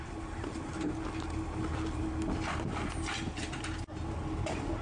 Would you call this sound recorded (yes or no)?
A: yes